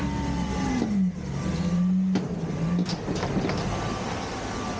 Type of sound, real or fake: real